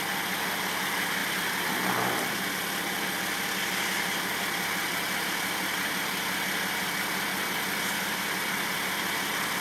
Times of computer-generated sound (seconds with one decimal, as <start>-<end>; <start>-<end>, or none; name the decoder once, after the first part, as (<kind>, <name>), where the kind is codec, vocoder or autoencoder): none